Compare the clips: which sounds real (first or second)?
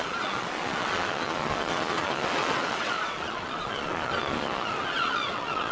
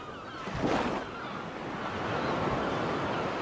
second